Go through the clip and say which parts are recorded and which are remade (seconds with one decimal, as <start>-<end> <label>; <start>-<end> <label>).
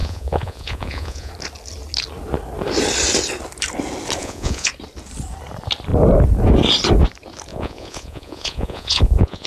0.0-1.3 remade; 1.3-4.2 recorded; 4.2-4.7 remade; 4.7-7.5 recorded; 7.5-9.5 remade